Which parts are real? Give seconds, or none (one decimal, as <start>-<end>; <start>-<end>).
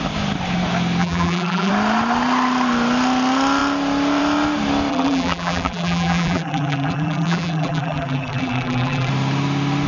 0.0-1.0; 1.7-4.9; 9.1-9.9